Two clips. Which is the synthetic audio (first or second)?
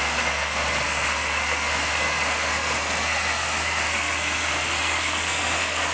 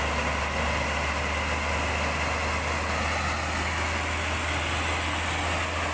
first